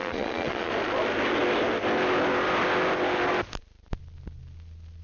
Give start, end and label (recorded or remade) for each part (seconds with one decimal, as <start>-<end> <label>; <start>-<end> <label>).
0.0-0.7 remade; 0.7-5.0 recorded